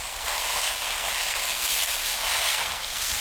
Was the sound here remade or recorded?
remade